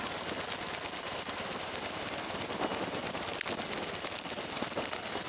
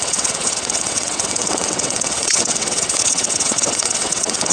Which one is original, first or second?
first